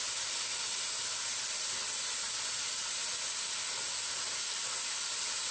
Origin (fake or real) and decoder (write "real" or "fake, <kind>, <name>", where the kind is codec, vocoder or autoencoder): real